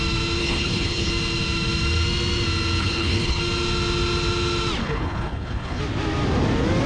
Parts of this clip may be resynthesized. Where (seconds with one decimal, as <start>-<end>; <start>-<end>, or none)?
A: 0.4-1.1; 2.8-3.4; 4.8-5.8